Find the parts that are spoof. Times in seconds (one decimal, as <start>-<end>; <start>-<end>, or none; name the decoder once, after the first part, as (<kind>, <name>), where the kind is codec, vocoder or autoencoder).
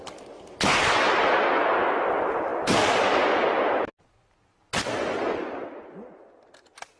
none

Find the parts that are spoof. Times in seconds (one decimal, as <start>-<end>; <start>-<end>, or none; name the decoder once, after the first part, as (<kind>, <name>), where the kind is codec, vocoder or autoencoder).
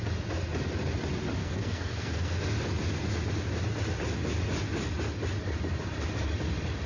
1.4-2.4 (codec, SNAC)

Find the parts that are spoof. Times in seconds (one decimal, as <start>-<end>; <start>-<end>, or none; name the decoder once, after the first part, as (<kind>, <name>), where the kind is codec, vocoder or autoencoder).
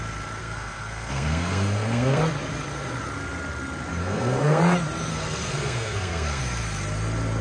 0.4-2.2 (codec, SNAC); 3.9-4.6; 5.1-6.4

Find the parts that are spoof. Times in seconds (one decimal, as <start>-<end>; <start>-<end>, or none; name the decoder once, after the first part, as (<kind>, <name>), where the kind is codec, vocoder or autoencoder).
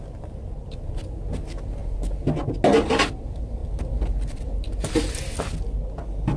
none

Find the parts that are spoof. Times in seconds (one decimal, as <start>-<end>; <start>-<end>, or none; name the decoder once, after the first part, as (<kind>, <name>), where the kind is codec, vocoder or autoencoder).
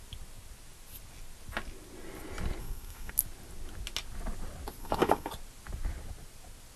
2.6-3.1 (codec, SNAC); 4.8-5.3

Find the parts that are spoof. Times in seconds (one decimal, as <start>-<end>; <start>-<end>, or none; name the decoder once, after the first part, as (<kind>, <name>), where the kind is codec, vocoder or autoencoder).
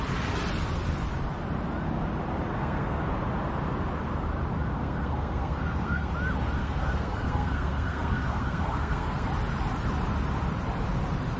2.5-3.0 (codec, SNAC); 4.8-6.1; 6.6-9.3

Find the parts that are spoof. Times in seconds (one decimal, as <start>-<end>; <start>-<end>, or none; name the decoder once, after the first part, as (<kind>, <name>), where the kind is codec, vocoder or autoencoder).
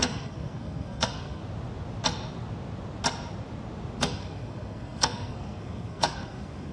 0.0-1.4 (codec, SNAC); 4.0-6.7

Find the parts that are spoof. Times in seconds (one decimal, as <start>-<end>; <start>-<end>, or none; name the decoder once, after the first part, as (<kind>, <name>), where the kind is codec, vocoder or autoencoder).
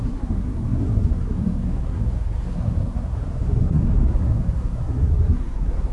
0.0-5.9 (codec, SNAC)